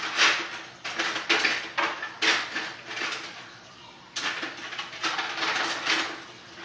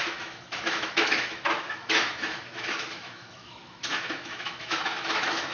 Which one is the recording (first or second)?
first